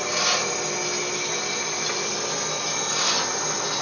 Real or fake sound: real